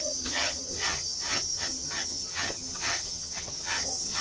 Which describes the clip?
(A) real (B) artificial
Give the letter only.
B